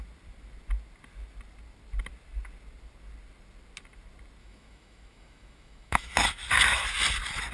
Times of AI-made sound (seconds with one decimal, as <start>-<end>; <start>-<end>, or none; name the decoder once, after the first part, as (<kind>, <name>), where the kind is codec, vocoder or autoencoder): 4.4-6.1 (autoencoder, DAC-VAE)

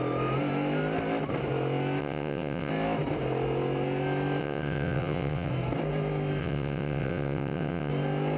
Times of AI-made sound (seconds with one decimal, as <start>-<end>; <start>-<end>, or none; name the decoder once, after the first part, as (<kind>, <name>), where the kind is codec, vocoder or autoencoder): 2.0-2.7 (vocoder, WaveNeXt); 4.4-5.5; 6.4-7.9

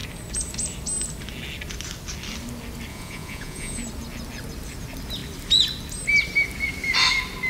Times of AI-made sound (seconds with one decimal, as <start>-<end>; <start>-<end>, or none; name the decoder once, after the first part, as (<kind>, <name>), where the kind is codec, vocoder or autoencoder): 2.9-3.8 (vocoder, Vocos)